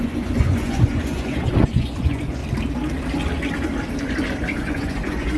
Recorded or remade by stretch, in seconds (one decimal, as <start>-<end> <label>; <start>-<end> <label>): 0.0-2.4 remade; 2.4-4.6 recorded; 4.6-5.4 remade